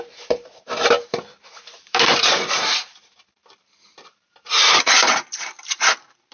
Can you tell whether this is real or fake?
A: fake